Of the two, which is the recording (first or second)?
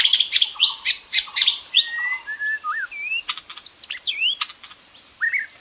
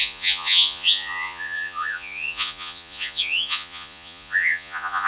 first